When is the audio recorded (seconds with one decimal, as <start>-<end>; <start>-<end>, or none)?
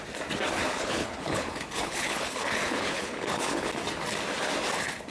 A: 0.0-0.6; 3.7-5.1